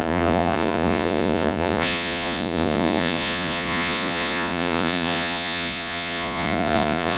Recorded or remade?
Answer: remade